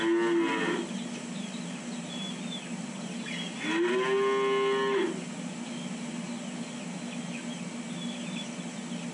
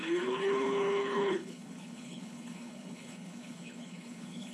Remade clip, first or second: second